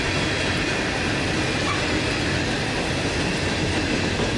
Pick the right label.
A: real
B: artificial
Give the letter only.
A